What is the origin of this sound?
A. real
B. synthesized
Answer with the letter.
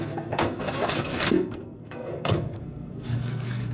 B